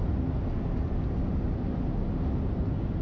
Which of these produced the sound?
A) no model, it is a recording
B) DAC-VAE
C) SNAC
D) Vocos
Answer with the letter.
A